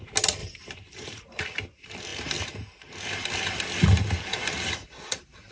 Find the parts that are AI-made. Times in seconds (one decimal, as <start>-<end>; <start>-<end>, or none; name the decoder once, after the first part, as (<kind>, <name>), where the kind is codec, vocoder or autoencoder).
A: 0.4-1.4 (vocoder, BigVGAN v2)